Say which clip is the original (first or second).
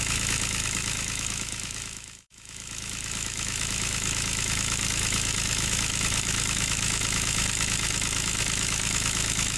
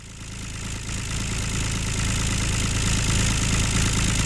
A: second